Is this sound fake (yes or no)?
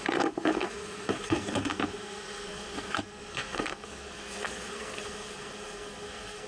yes